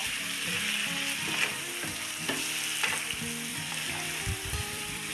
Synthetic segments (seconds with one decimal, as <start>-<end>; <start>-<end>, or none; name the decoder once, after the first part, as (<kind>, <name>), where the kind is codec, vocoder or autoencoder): 3.5-5.1 (vocoder, BigVGAN v2)